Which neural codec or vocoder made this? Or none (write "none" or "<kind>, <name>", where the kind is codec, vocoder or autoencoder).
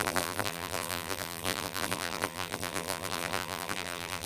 vocoder, BigVGAN v2